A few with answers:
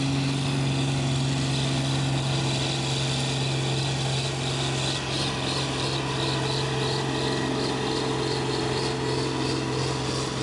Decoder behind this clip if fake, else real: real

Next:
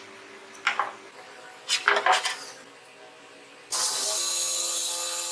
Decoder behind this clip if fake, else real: real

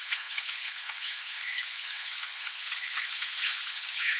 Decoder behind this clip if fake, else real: fake, codec, HILCodec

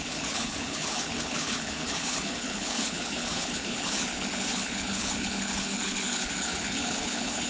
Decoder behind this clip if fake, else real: fake, codec, HILCodec